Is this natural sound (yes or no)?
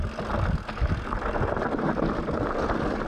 yes